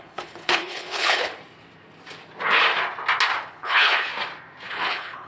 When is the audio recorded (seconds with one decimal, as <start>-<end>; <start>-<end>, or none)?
1.3-3.5; 4.1-4.7